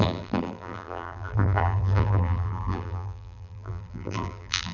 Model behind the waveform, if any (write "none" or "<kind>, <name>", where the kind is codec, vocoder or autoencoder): vocoder, BigVGAN v2